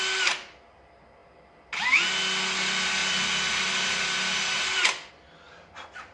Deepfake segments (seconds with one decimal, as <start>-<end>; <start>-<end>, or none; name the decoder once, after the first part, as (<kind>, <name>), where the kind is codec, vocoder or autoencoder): none